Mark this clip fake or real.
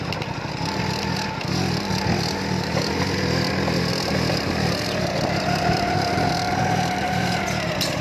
real